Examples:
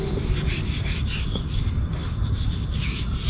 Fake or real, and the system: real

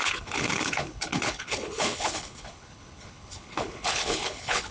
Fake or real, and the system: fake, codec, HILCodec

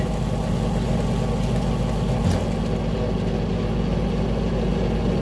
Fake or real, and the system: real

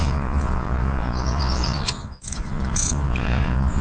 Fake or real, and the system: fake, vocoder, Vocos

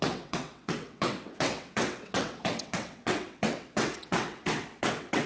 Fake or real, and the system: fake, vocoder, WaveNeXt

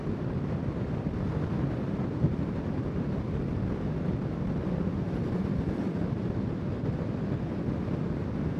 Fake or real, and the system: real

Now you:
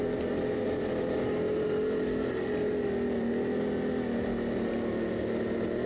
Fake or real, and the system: real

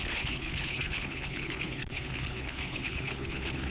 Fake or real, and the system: fake, codec, HILCodec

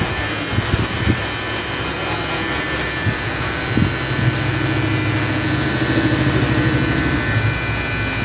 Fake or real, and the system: real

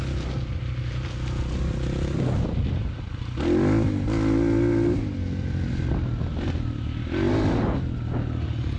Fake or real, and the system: real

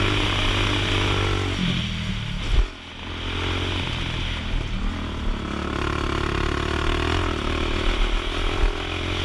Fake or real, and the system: real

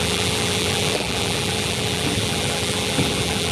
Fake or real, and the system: fake, vocoder, BigVGAN v2